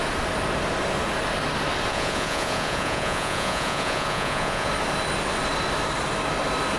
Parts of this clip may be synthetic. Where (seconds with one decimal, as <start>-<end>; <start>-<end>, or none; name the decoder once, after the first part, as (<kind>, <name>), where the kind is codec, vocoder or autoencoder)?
1.9-4.7 (vocoder, Vocos)